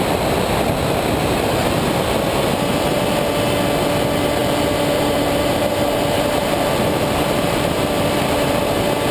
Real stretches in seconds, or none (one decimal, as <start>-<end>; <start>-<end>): 0.0-4.4; 8.5-9.1